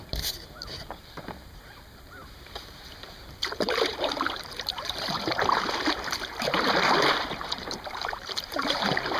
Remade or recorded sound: remade